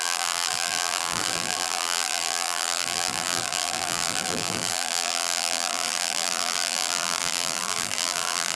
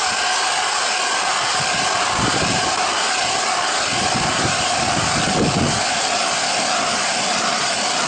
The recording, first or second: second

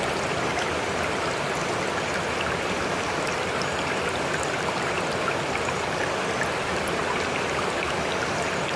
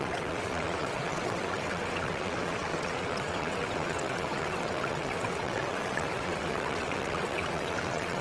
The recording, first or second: first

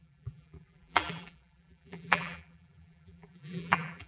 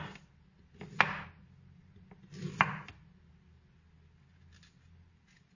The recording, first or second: second